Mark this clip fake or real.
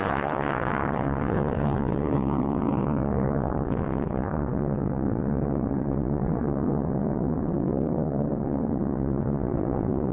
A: fake